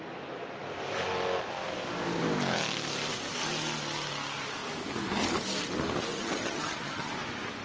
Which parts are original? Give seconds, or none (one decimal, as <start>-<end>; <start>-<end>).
0.0-6.1; 7.1-7.6